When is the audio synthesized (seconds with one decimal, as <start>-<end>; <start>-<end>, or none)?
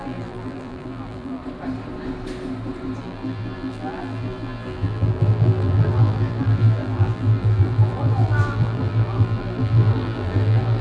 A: 0.0-1.4; 3.0-10.8